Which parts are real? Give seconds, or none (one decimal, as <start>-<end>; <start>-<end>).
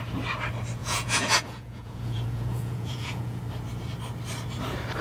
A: 0.0-0.8; 3.4-5.0